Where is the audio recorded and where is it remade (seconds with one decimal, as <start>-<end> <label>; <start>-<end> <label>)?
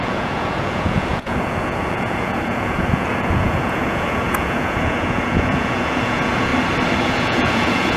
0.0-6.5 remade; 6.5-7.0 recorded; 7.0-8.0 remade